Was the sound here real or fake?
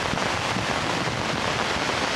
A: real